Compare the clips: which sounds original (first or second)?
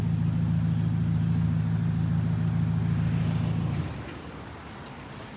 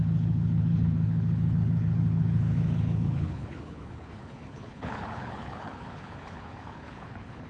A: first